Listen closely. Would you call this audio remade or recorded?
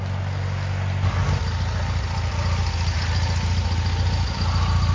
recorded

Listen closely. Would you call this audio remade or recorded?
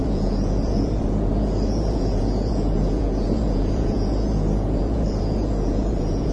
remade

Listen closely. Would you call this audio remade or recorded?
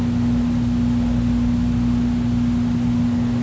recorded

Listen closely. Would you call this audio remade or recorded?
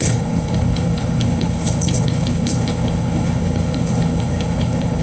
remade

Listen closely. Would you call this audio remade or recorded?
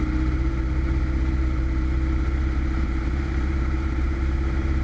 remade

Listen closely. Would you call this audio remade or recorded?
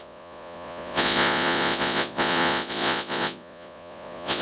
remade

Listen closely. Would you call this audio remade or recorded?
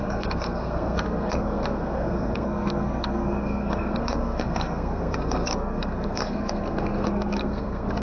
remade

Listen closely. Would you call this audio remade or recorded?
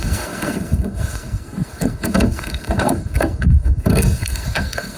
remade